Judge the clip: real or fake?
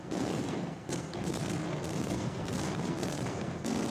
fake